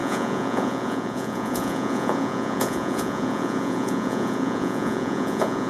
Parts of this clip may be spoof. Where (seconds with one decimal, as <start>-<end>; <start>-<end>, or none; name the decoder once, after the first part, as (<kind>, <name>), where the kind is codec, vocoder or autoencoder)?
0.0-5.7 (vocoder, Vocos)